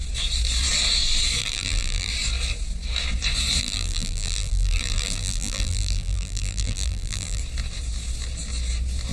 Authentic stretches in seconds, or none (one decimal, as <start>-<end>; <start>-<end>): 0.0-1.4; 2.1-3.6; 7.4-9.1